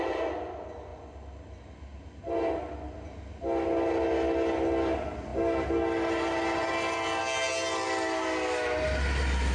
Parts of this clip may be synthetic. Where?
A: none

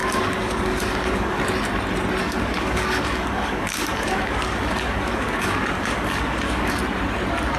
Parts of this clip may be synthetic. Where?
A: 0.0-1.4 (codec, DAC); 2.2-6.8